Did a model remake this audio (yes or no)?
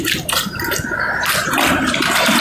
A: yes